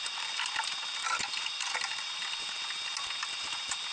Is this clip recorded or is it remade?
recorded